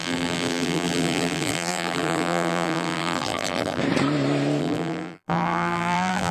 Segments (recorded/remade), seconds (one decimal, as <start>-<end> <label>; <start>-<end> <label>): 0.0-3.8 remade; 3.8-4.6 recorded; 4.6-6.3 remade